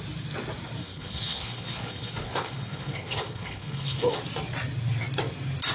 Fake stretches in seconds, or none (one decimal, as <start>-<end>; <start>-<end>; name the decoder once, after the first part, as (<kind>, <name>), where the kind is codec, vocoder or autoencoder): 0.8-4.2 (codec, HILCodec)